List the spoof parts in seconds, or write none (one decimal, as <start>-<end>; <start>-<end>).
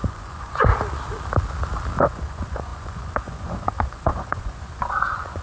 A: 0.0-0.7; 2.0-5.4